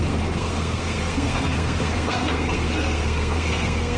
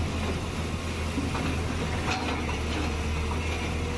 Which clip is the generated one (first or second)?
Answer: first